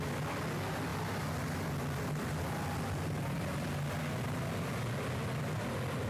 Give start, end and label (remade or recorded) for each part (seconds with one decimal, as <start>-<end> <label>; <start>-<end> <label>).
0.0-6.1 recorded